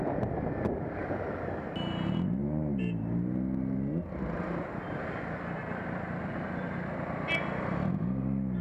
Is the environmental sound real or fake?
real